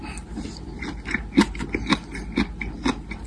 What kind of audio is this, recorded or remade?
recorded